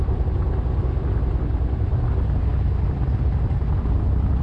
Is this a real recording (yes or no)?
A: yes